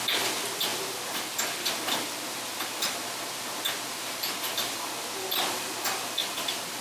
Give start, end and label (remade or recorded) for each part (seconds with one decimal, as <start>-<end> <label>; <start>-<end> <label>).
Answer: 0.0-0.7 recorded; 0.7-4.8 remade; 4.8-6.2 recorded; 6.2-6.8 remade

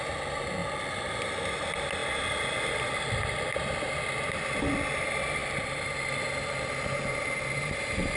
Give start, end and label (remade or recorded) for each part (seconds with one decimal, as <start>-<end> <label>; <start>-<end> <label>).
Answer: 0.0-5.4 recorded; 5.4-6.3 remade; 6.3-8.2 recorded

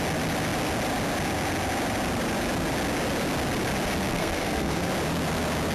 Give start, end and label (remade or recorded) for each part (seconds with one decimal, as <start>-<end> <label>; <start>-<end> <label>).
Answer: 0.0-4.1 recorded; 4.1-4.9 remade; 4.9-5.7 recorded

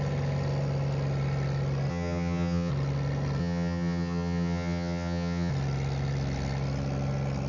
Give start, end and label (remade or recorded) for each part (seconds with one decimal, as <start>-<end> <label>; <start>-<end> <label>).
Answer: 0.0-1.9 recorded; 1.9-2.7 remade; 2.7-3.4 recorded; 3.4-5.5 remade; 5.5-7.5 recorded

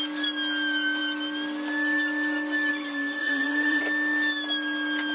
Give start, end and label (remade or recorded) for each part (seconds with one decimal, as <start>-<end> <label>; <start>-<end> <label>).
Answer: 0.0-3.2 recorded; 3.2-3.8 remade; 3.8-5.1 recorded

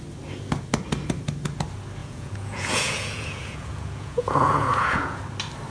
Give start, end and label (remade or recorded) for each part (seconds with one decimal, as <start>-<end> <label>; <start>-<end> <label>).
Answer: 0.0-2.0 recorded; 2.0-5.2 remade; 5.2-5.7 recorded